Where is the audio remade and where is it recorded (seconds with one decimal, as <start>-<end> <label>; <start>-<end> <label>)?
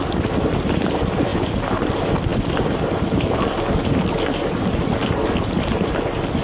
0.0-6.4 recorded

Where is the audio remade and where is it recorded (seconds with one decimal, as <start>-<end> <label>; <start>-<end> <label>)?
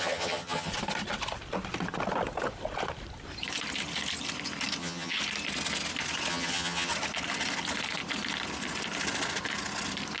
0.0-0.7 remade; 0.7-4.8 recorded; 4.8-5.2 remade; 5.2-6.3 recorded; 6.3-6.9 remade; 6.9-10.2 recorded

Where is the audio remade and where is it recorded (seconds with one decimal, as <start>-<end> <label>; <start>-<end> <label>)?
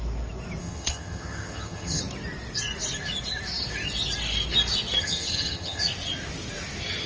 0.0-0.6 recorded; 0.6-2.0 remade; 2.0-5.0 recorded; 5.0-5.8 remade; 5.8-7.1 recorded